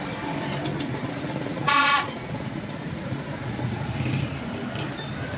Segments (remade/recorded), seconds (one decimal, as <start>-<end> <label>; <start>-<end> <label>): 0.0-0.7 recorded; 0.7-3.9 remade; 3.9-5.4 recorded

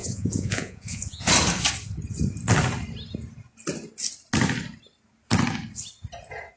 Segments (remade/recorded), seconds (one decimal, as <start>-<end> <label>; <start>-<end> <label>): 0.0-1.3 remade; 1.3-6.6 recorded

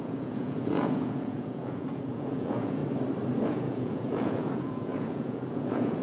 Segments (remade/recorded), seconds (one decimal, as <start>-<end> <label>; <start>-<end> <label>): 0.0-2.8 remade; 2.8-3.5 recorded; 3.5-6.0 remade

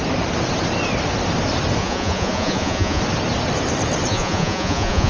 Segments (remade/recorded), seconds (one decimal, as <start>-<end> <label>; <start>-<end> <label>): 0.0-1.8 recorded; 1.8-3.0 remade; 3.0-4.1 recorded; 4.1-5.1 remade

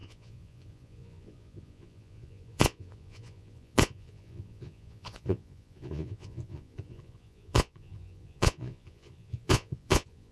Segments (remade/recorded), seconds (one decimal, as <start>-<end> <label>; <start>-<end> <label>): 0.0-10.3 remade

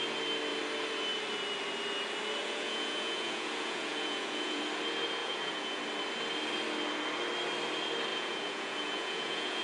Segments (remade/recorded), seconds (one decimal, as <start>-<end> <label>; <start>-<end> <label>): 0.0-2.4 recorded; 2.4-4.6 remade; 4.6-5.2 recorded; 5.2-5.8 remade; 5.8-8.1 recorded; 8.1-9.6 remade

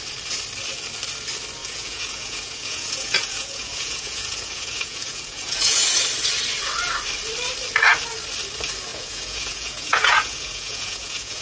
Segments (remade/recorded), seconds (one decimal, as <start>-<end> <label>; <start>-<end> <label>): 0.0-1.6 recorded; 1.6-5.8 remade; 5.8-8.9 recorded; 8.9-11.4 remade